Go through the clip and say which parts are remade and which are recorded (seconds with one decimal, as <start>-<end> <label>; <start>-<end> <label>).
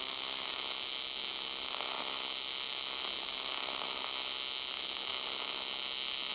0.0-6.3 recorded